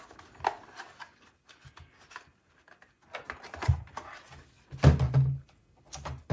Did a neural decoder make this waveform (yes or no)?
no